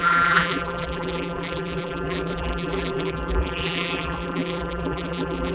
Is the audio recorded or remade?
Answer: remade